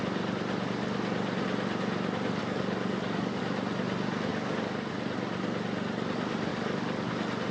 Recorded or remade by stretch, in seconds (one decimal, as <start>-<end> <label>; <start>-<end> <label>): 0.0-2.4 recorded; 2.4-3.4 remade; 3.4-4.3 recorded; 4.3-4.9 remade; 4.9-6.5 recorded; 6.5-7.1 remade; 7.1-7.5 recorded